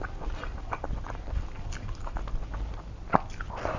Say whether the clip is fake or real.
real